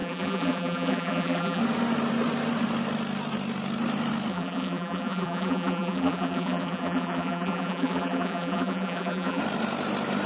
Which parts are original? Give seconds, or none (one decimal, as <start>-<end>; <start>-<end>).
1.6-4.3; 9.4-10.3